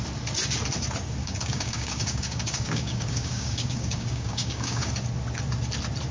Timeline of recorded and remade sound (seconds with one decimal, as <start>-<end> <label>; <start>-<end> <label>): 0.0-1.2 recorded; 1.2-4.9 remade; 4.9-6.1 recorded